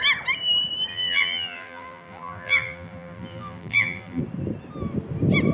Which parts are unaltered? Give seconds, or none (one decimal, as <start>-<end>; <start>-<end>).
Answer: 0.0-0.9; 4.2-5.5